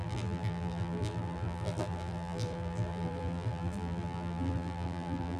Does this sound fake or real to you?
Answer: fake